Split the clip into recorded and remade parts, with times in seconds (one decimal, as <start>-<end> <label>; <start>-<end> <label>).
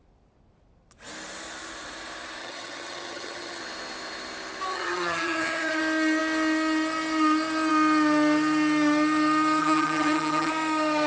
0.0-2.4 recorded; 2.4-3.6 remade; 3.6-4.7 recorded; 4.7-5.8 remade; 5.8-9.6 recorded; 9.6-10.5 remade; 10.5-11.1 recorded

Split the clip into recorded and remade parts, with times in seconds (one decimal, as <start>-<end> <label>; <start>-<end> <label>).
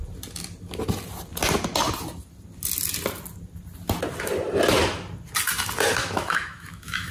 0.0-6.0 recorded; 6.0-7.1 remade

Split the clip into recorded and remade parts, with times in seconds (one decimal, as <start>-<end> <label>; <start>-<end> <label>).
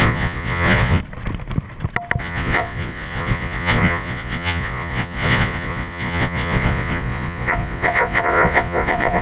0.0-1.0 remade; 1.0-2.2 recorded; 2.2-9.2 remade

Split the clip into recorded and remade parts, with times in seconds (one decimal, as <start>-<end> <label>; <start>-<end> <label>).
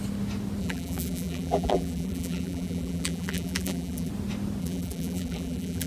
0.0-0.6 recorded; 0.6-4.1 remade; 4.1-4.6 recorded; 4.6-5.9 remade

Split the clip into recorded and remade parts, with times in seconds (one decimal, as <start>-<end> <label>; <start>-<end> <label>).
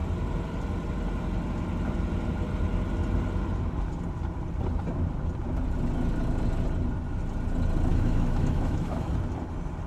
0.0-7.9 recorded; 7.9-9.1 remade; 9.1-9.9 recorded